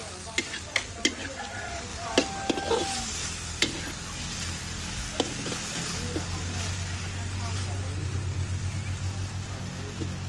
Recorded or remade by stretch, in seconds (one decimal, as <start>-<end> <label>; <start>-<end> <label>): 0.0-10.3 recorded